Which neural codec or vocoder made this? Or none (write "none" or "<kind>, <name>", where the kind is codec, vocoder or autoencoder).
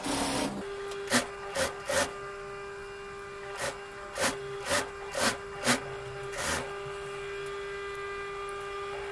none